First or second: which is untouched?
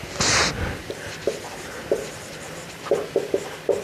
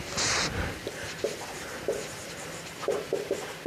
first